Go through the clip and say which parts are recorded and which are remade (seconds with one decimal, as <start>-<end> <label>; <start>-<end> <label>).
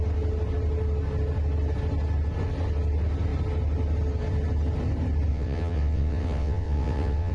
0.0-5.3 recorded; 5.3-7.3 remade